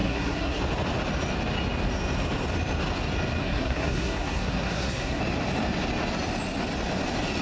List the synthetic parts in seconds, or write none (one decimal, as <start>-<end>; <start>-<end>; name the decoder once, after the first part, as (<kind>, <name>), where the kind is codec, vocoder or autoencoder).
0.0-0.6 (codec, SNAC); 3.4-5.2